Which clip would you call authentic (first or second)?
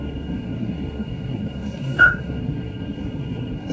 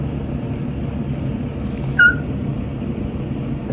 second